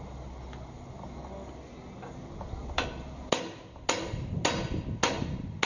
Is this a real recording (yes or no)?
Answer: yes